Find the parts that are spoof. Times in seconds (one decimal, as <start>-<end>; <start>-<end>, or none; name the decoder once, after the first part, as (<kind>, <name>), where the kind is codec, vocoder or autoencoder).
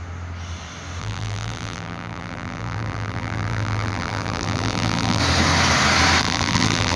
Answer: 1.0-5.2 (vocoder, BigVGAN v2); 6.2-7.0